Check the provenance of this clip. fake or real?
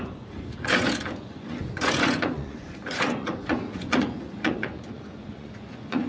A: fake